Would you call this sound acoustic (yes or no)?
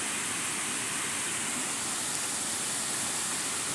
yes